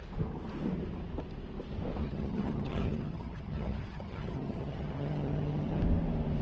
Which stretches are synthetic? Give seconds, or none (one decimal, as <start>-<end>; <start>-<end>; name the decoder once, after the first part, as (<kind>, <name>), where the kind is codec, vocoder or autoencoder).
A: 2.0-5.8 (vocoder, HiFi-GAN)